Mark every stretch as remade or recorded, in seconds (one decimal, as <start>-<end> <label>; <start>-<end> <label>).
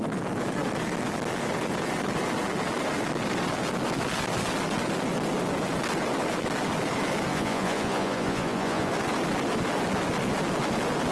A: 0.0-7.3 recorded; 7.3-8.9 remade; 8.9-11.1 recorded